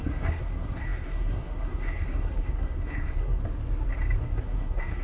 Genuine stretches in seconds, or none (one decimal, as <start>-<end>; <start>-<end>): 3.4-4.2